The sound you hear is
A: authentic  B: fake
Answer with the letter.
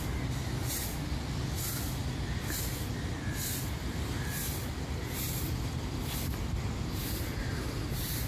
A